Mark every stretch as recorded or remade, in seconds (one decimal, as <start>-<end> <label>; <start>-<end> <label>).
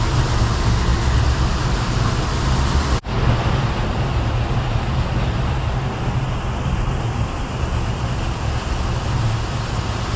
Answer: 0.0-10.2 recorded